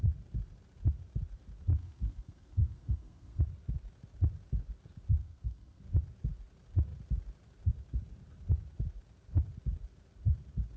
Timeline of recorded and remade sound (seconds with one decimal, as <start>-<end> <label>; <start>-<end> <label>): 0.0-1.7 recorded; 1.7-3.4 remade; 3.4-5.2 recorded; 5.2-5.8 remade; 5.8-10.8 recorded